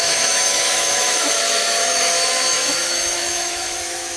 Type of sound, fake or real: fake